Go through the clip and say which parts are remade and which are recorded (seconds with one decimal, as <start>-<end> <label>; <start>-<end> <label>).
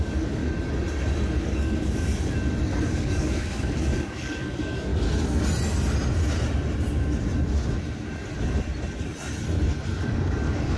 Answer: 0.0-0.4 remade; 0.4-1.4 recorded; 1.4-2.1 remade; 2.1-2.8 recorded; 2.8-4.9 remade; 4.9-10.0 recorded; 10.0-10.8 remade